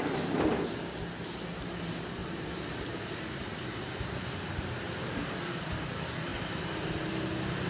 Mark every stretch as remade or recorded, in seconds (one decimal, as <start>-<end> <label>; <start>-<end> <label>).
0.0-2.2 recorded; 2.2-5.5 remade; 5.5-6.3 recorded; 6.3-7.1 remade; 7.1-7.7 recorded

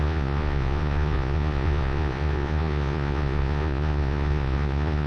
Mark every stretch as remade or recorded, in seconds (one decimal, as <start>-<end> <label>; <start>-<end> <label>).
0.0-5.1 remade

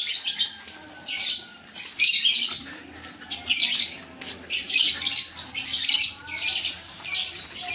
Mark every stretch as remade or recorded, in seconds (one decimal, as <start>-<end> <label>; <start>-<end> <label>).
0.0-7.7 recorded

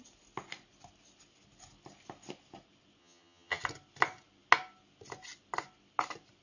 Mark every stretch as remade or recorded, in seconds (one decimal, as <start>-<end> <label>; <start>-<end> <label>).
0.0-3.0 recorded; 3.0-3.6 remade; 3.6-6.4 recorded

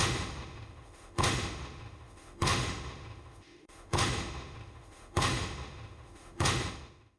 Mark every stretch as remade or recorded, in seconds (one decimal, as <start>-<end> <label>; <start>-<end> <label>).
0.0-7.2 remade

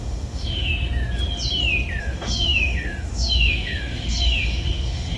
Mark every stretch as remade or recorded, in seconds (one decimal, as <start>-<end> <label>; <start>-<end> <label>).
0.0-0.7 remade; 0.7-2.0 recorded; 2.0-5.2 remade

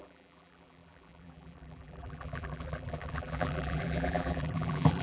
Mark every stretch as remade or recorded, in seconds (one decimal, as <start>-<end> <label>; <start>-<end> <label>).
0.0-5.0 remade